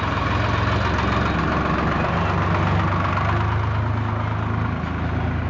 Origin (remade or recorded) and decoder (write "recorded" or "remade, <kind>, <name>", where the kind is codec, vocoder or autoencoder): recorded